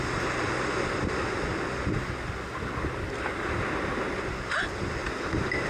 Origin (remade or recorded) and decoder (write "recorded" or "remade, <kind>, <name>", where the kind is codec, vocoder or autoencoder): recorded